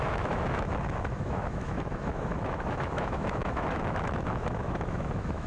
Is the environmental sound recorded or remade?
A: remade